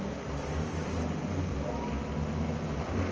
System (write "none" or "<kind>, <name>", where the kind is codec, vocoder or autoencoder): none